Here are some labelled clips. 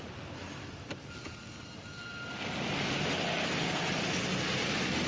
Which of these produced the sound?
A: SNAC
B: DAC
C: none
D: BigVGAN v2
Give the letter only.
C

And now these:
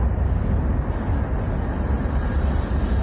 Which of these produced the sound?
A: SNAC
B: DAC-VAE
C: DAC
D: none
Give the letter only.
D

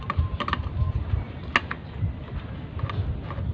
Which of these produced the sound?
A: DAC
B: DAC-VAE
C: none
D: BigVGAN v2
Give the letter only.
C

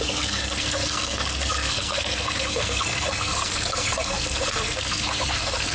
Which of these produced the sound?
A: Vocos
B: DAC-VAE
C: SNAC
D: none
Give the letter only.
C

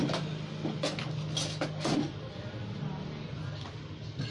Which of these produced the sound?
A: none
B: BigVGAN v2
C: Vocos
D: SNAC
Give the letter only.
A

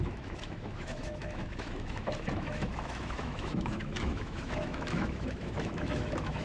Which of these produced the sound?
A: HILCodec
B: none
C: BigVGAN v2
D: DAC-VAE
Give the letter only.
D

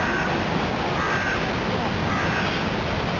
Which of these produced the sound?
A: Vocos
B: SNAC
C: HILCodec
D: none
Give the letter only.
D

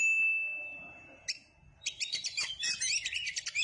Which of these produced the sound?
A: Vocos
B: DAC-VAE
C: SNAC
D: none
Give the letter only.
D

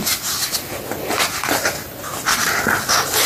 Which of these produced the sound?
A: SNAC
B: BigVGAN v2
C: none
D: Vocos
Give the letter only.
C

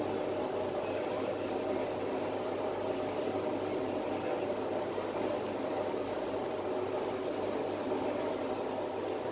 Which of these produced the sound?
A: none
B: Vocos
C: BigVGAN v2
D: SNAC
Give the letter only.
A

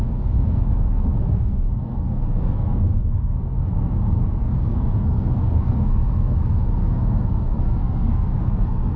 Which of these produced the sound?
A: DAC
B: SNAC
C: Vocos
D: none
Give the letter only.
B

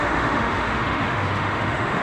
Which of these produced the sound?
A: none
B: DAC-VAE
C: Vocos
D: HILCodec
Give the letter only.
B